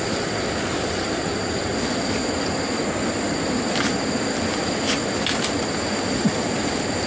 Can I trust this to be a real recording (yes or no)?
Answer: yes